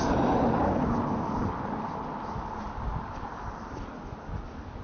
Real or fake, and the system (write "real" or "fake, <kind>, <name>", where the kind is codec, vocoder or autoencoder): real